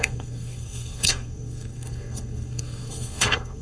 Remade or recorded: remade